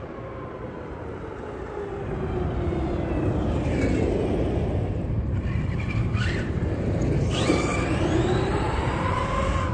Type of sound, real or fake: real